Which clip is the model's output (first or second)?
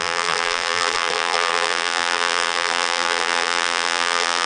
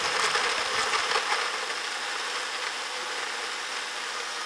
first